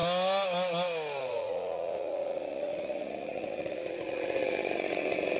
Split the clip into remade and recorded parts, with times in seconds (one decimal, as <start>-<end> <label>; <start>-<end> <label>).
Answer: 0.0-1.2 recorded; 1.2-5.4 remade